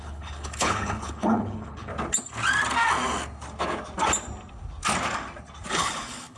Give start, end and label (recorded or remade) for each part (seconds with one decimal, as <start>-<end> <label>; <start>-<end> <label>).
0.0-1.9 remade; 1.9-5.7 recorded; 5.7-6.4 remade